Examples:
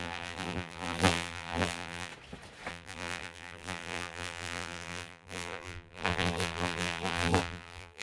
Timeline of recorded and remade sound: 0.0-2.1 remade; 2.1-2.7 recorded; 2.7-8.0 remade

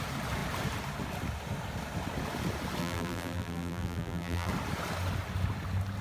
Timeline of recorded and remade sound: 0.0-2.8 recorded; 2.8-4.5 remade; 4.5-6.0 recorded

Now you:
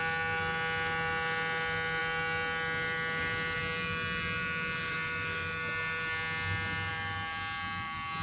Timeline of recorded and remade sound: 0.0-8.2 recorded

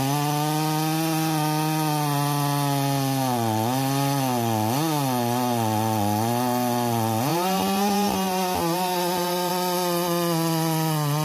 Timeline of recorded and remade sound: 0.0-7.3 recorded; 7.3-9.5 remade; 9.5-11.2 recorded

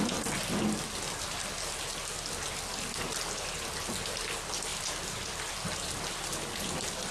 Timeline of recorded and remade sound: 0.0-7.1 recorded

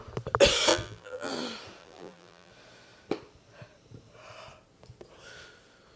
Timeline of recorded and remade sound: 0.0-0.7 recorded; 0.7-1.3 remade; 1.3-1.8 recorded; 1.8-2.5 remade; 2.5-6.0 recorded

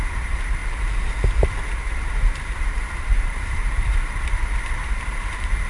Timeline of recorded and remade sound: 0.0-0.6 remade; 0.6-1.8 recorded; 1.8-5.7 remade